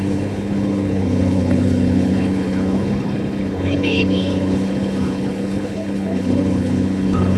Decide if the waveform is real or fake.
fake